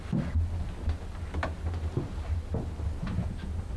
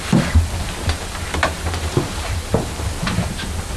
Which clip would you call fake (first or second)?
second